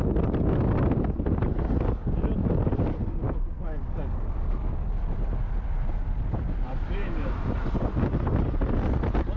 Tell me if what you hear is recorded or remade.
recorded